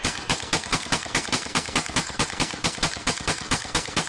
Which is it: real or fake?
fake